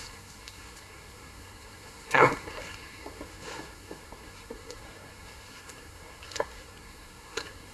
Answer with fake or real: fake